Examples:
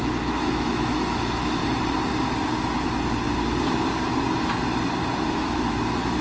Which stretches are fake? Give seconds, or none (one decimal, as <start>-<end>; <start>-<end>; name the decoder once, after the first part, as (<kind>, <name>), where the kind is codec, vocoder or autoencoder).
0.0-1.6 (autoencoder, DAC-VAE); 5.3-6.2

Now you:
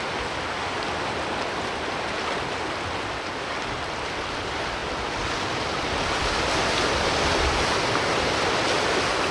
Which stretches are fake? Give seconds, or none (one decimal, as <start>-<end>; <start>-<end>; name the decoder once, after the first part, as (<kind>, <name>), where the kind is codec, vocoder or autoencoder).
none

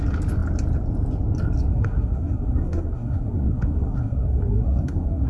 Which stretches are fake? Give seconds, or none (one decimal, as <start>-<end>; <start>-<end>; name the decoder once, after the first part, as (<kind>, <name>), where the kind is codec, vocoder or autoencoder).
1.7-5.3 (codec, SNAC)